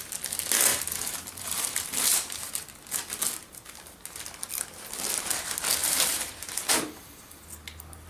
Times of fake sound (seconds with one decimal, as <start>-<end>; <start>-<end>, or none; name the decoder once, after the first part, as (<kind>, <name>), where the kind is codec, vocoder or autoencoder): 0.7-2.4 (vocoder, BigVGAN v2); 5.8-7.5